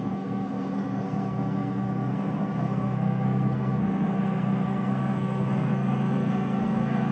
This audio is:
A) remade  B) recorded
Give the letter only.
A